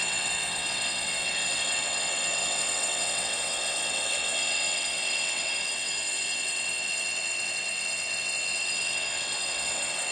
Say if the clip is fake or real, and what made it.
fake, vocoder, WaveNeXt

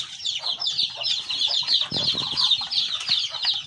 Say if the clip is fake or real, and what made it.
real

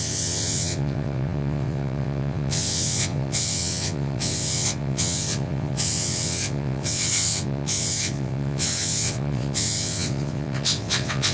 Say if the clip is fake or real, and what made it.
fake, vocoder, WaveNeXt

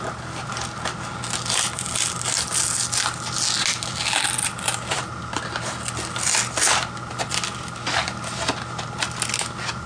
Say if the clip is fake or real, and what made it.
real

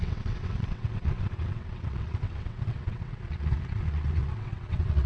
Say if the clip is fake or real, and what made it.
fake, vocoder, WaveNeXt